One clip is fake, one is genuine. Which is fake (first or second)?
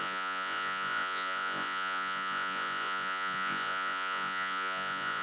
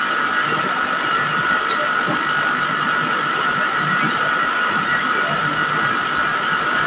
first